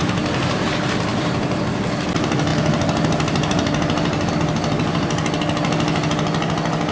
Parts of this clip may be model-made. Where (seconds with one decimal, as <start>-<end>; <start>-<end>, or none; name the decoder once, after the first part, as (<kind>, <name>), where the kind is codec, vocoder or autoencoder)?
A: 0.0-0.7 (vocoder, BigVGAN v2); 1.1-1.6